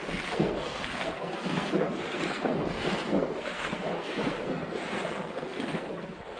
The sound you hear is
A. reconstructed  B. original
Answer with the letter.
A